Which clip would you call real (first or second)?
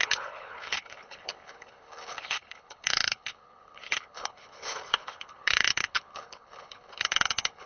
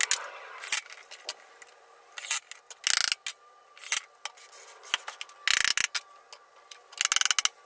second